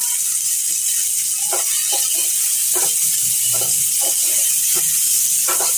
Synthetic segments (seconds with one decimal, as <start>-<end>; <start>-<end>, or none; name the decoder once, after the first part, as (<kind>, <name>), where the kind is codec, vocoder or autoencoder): none